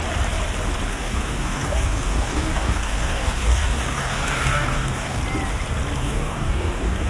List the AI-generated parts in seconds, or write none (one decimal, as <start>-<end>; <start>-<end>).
0.9-5.2; 6.0-7.1